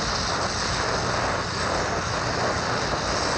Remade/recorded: recorded